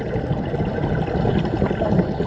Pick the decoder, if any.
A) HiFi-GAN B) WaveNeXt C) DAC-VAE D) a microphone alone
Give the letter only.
D